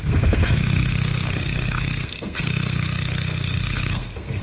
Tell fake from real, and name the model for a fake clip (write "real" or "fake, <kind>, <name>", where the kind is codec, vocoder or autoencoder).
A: fake, codec, SNAC